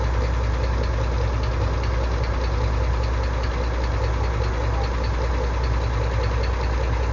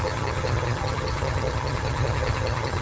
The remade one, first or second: second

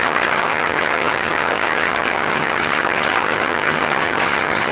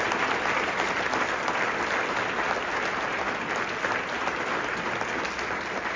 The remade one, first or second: first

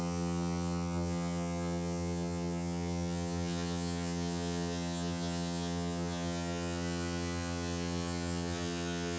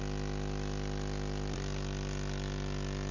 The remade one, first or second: first